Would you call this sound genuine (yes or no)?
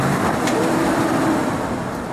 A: yes